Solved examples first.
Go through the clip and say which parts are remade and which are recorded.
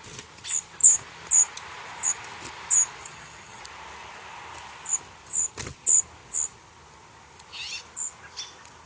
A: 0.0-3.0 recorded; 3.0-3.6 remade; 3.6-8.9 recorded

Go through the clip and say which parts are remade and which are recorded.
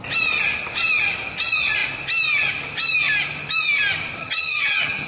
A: 0.0-4.2 recorded; 4.2-5.1 remade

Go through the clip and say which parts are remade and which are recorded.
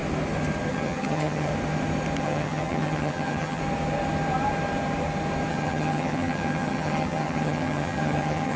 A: 0.0-0.7 recorded; 0.7-1.5 remade; 1.5-2.2 recorded; 2.2-3.6 remade; 3.6-5.5 recorded; 5.5-8.6 remade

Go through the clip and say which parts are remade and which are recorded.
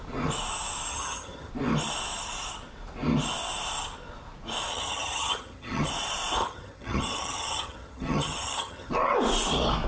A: 0.0-0.9 recorded; 0.9-1.5 remade; 1.5-4.7 recorded; 4.7-5.9 remade; 5.9-6.4 recorded; 6.4-8.9 remade; 8.9-9.9 recorded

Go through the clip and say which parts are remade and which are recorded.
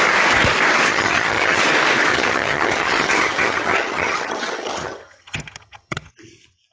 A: 0.0-0.9 recorded; 0.9-1.6 remade; 1.6-2.1 recorded; 2.1-6.1 remade; 6.1-6.7 recorded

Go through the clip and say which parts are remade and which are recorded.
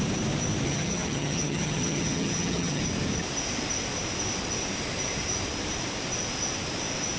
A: 0.0-0.7 recorded; 0.7-2.8 remade; 2.8-7.2 recorded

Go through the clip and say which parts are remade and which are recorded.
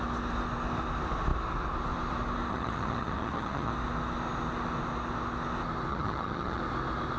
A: 0.0-2.5 recorded; 2.5-3.7 remade; 3.7-5.9 recorded; 5.9-6.6 remade; 6.6-7.2 recorded